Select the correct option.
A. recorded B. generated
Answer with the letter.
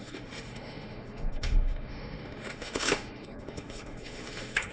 B